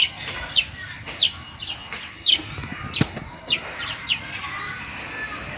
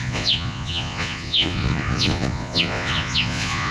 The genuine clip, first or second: first